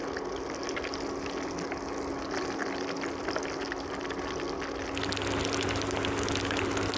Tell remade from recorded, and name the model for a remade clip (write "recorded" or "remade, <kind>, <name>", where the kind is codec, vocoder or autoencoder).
recorded